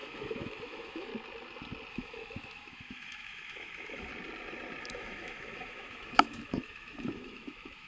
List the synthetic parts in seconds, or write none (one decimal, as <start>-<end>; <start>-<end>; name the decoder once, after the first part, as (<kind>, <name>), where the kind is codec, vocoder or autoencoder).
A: 0.0-1.1 (autoencoder, DAC-VAE); 1.9-4.1; 4.8-7.9